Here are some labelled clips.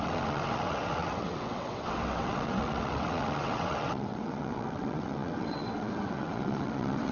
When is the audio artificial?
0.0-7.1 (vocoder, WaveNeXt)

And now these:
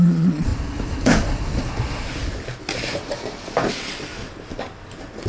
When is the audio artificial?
0.0-0.5 (vocoder, WaveNeXt); 3.7-4.2

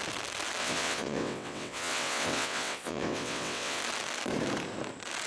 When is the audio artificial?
0.6-3.8 (vocoder, WaveNeXt)

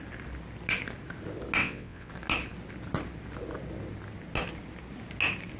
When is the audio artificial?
1.6-2.1 (vocoder, WaveNeXt)

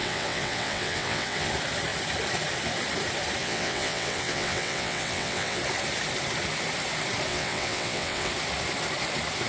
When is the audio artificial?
0.0-1.5 (vocoder, WaveNeXt); 3.4-5.6; 7.3-8.3

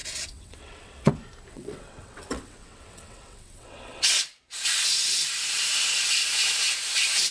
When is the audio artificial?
0.0-1.1 (vocoder, WaveNeXt); 1.5-4.6

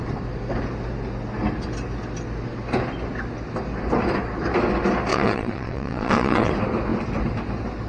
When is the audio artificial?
5.1-6.5 (vocoder, WaveNeXt)